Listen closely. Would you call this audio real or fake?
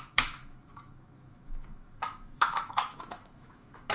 fake